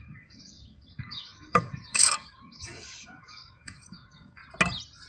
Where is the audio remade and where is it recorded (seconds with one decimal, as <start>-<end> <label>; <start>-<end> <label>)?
0.0-4.4 remade; 4.4-5.1 recorded